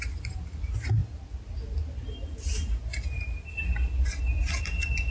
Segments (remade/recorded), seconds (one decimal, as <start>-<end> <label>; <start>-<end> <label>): 0.0-5.1 recorded